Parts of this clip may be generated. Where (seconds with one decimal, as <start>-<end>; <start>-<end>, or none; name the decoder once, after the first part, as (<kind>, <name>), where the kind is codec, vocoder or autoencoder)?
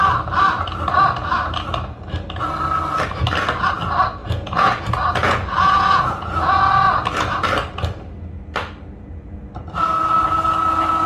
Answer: 4.2-4.8 (vocoder, Vocos); 5.2-6.7